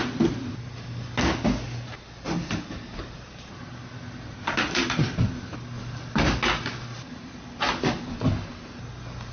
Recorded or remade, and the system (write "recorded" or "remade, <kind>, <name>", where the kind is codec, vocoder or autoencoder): recorded